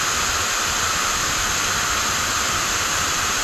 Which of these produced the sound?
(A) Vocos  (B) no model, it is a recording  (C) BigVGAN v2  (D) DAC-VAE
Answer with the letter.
B